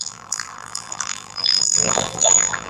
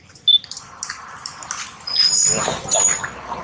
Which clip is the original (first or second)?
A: second